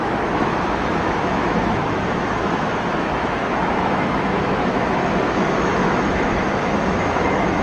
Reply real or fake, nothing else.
fake